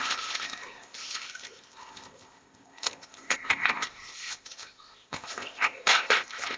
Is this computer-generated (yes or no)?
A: yes